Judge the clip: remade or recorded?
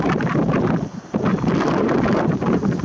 recorded